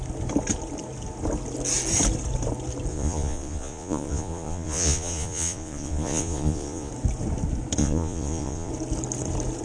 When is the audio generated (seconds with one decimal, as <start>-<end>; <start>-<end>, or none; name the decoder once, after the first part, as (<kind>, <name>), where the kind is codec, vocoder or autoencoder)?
2.9-6.9 (vocoder, Vocos); 7.8-8.7